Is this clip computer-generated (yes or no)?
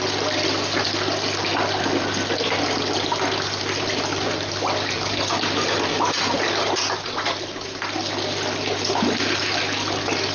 no